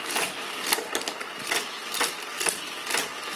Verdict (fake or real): real